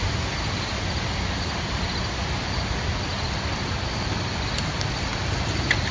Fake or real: real